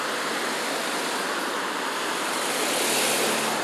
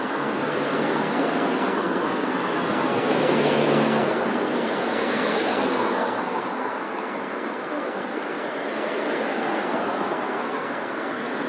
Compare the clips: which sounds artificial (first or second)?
second